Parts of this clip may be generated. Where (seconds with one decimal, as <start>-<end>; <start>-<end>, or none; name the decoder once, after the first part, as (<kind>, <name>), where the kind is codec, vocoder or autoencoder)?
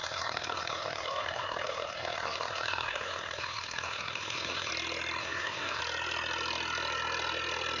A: 0.0-4.7 (codec, SNAC); 5.2-5.8